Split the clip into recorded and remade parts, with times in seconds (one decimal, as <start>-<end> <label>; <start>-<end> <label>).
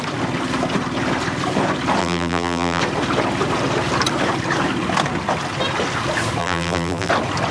0.0-2.0 recorded; 2.0-2.8 remade; 2.8-6.4 recorded; 6.4-7.1 remade; 7.1-7.5 recorded